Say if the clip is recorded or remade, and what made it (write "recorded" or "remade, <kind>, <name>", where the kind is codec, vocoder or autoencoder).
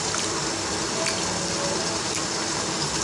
recorded